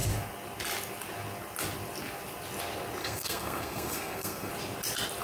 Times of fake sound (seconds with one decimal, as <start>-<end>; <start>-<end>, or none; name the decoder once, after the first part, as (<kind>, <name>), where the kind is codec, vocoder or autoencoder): 3.0-4.5 (codec, SNAC)